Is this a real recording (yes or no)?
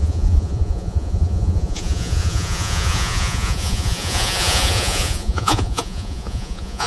no